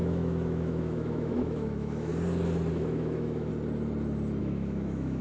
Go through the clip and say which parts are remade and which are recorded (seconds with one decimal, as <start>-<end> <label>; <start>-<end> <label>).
0.0-2.1 remade; 2.1-2.7 recorded; 2.7-3.5 remade; 3.5-4.4 recorded; 4.4-5.2 remade